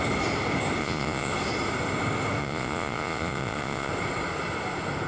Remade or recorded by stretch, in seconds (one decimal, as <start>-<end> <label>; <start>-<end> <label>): 0.0-0.8 recorded; 0.8-1.3 remade; 1.3-2.4 recorded; 2.4-3.9 remade; 3.9-5.1 recorded

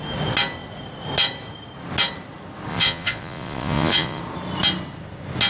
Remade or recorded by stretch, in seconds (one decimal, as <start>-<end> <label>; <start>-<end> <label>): 0.0-2.7 recorded; 2.7-4.2 remade; 4.2-5.5 recorded

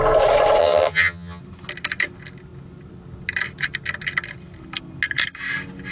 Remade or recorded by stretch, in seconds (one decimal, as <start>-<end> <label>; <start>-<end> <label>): 0.0-0.6 recorded; 0.6-1.4 remade; 1.4-5.9 recorded

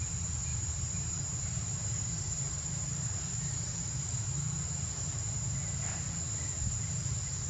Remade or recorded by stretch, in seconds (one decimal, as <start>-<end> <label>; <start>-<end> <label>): 0.0-0.5 recorded; 0.5-4.5 remade; 4.5-7.5 recorded

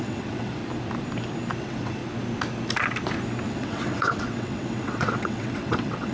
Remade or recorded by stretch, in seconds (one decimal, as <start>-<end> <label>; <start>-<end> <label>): 0.0-0.6 remade; 0.6-1.6 recorded; 1.6-2.0 remade; 2.0-3.5 recorded; 3.5-6.1 remade

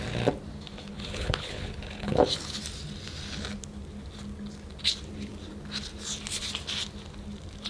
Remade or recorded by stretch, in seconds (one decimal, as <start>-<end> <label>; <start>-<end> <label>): 0.0-0.9 recorded; 0.9-2.6 remade; 2.6-7.7 recorded